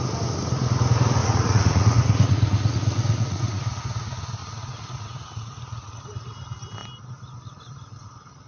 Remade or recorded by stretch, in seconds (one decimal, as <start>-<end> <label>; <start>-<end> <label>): 0.0-1.2 recorded; 1.2-3.8 remade; 3.8-4.4 recorded; 4.4-6.0 remade; 6.0-8.5 recorded